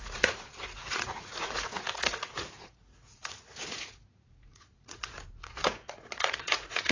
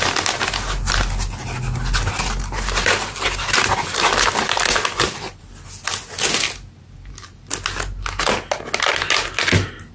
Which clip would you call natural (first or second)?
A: second